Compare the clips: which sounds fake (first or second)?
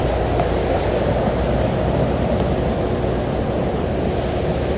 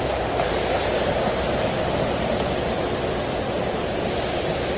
second